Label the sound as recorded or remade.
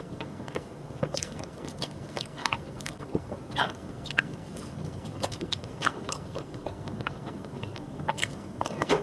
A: remade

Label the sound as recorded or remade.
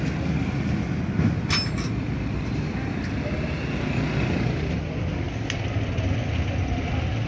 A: recorded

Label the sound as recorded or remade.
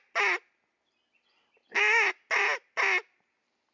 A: recorded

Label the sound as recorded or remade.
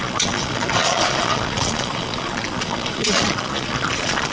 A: remade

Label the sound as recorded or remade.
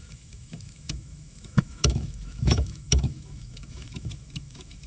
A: remade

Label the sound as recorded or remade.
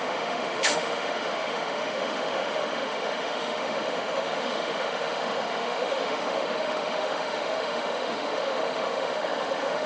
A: remade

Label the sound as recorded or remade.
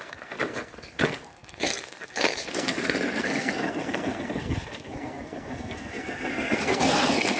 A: remade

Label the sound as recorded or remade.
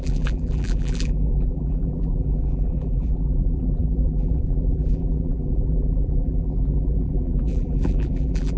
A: remade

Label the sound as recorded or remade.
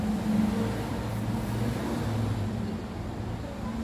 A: recorded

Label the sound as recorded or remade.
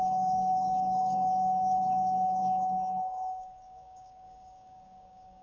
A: remade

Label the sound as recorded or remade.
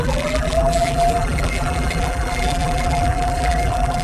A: remade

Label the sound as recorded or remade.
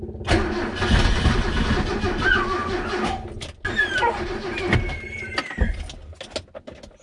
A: recorded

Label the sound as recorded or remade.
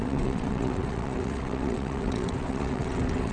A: remade